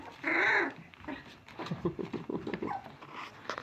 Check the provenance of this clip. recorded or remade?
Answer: recorded